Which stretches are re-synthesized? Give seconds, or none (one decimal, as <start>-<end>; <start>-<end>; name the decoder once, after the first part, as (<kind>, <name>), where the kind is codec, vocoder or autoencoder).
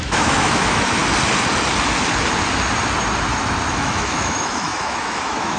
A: 0.0-1.0 (autoencoder, DAC-VAE); 3.7-5.6